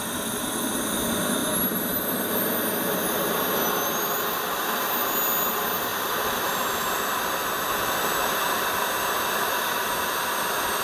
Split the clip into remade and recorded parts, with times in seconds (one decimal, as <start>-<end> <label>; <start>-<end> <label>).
0.0-10.8 recorded